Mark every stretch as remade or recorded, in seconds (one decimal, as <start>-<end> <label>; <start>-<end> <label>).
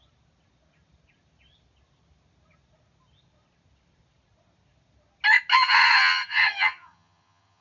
0.0-5.5 recorded; 5.5-7.6 remade